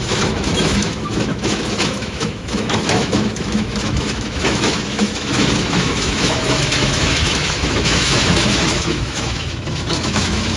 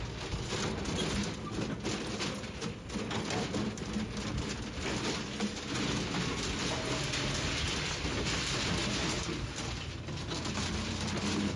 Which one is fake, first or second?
first